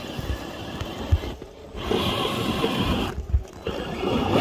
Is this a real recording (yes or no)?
yes